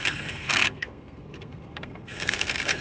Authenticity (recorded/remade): remade